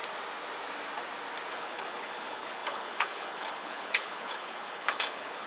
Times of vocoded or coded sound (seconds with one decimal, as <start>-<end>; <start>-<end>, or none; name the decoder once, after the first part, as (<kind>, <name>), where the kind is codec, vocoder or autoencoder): 1.5-5.5 (codec, HILCodec)